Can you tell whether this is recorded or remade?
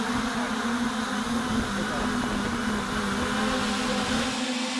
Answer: recorded